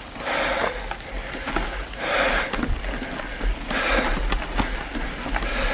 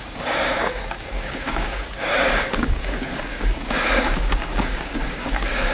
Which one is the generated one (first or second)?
second